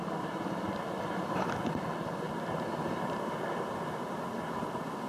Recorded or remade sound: recorded